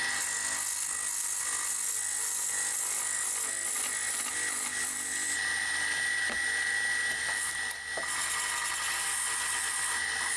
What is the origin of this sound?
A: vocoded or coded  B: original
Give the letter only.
B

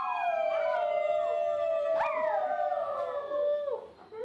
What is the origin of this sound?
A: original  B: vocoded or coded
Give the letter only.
A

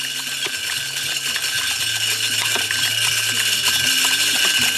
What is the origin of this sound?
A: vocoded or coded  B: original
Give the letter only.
B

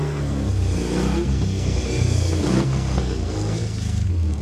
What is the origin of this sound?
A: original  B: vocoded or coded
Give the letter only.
B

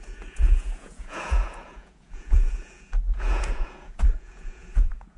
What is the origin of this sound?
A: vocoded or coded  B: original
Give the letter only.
A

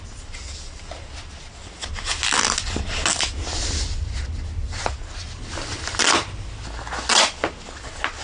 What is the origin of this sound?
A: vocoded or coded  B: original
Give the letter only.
B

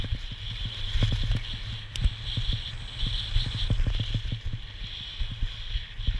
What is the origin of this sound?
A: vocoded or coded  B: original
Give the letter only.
B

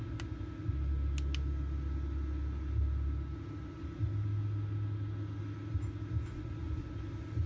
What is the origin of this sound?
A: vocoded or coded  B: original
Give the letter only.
B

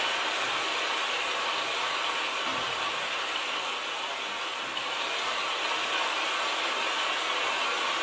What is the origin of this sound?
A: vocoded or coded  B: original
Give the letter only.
B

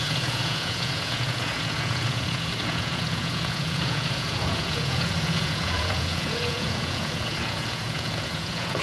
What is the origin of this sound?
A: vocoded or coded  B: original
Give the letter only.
A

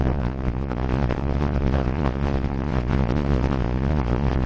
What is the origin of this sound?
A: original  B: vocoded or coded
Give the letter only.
B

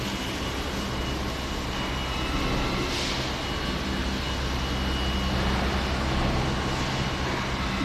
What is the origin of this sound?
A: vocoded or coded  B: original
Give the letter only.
B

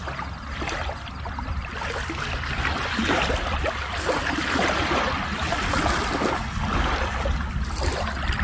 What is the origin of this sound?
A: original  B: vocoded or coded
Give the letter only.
A